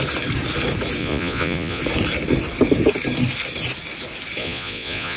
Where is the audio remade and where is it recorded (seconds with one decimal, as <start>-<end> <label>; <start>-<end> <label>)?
0.0-1.0 recorded; 1.0-1.8 remade; 1.8-4.4 recorded; 4.4-5.2 remade